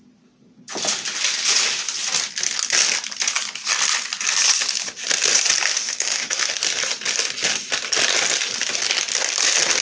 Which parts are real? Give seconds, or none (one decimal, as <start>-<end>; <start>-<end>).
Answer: 0.0-5.7; 6.5-9.8